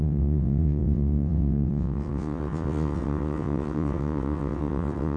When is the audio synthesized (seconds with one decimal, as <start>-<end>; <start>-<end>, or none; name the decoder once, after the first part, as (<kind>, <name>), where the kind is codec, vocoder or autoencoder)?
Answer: 0.0-5.2 (vocoder, WaveNeXt)